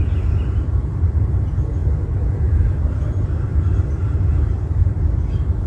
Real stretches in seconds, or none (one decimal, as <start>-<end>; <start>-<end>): 0.0-5.7